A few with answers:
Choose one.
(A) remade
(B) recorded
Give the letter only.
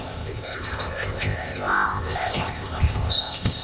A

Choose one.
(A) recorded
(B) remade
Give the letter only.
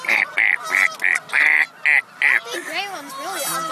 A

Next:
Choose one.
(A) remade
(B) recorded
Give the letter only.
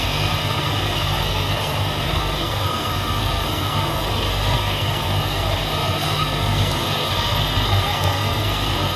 A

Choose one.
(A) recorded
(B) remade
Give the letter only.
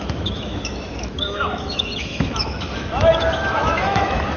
B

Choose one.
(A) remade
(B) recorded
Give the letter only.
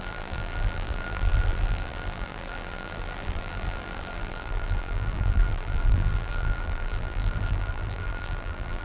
A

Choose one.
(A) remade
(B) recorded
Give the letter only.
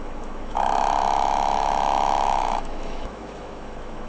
A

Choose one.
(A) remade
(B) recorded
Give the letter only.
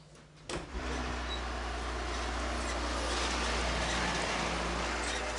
B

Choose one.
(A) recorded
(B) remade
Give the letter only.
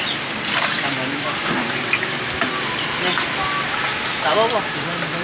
A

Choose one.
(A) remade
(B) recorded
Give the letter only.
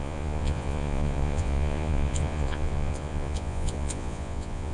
A